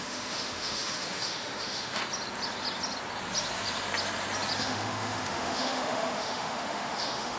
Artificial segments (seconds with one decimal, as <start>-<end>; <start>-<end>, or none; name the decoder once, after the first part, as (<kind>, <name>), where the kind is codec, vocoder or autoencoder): 0.0-2.0 (autoencoder, DAC-VAE); 4.6-7.4